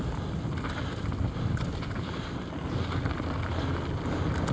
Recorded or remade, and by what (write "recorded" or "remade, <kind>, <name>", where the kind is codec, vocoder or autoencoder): recorded